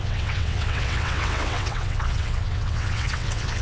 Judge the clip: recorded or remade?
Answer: remade